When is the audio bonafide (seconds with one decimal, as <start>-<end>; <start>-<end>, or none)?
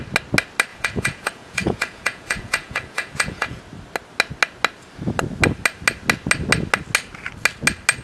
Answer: 0.0-0.7; 3.6-8.0